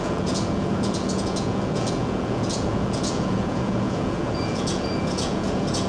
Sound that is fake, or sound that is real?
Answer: fake